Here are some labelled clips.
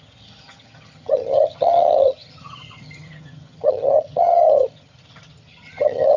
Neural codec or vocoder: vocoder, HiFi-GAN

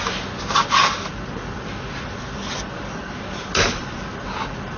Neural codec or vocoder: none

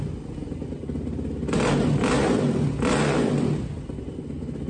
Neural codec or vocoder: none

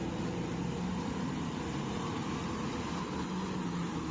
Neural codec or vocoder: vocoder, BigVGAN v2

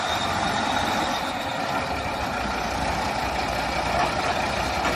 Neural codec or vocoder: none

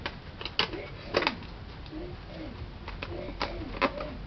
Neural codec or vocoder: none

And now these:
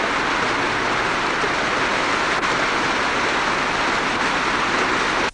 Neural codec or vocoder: none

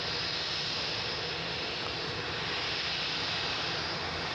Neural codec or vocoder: none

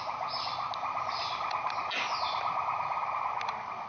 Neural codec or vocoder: none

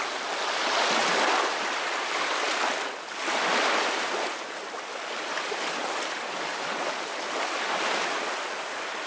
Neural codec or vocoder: none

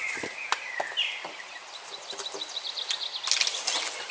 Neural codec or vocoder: none